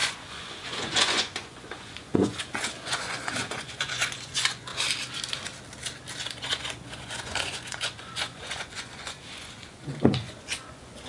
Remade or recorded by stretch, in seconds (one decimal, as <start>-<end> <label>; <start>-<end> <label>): 0.0-4.7 remade; 4.7-6.2 recorded; 6.2-11.1 remade